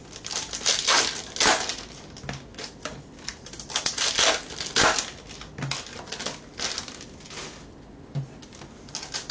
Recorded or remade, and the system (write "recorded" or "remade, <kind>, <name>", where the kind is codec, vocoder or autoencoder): recorded